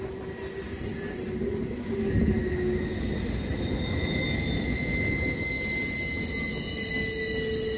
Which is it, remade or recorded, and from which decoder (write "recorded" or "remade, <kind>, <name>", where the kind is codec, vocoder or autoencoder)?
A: recorded